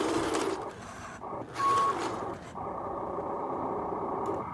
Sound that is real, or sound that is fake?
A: real